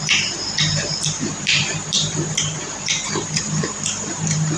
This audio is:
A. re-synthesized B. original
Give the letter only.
A